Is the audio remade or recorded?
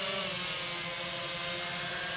recorded